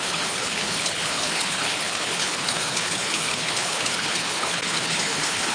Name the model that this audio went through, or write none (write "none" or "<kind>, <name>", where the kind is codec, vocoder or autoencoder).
codec, HILCodec